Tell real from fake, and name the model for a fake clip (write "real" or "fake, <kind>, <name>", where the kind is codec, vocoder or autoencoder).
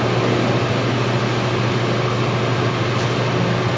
real